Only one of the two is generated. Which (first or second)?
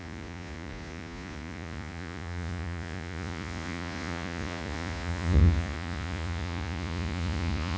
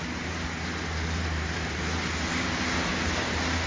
first